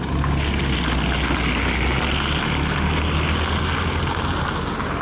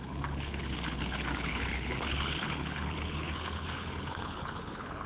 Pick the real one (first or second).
first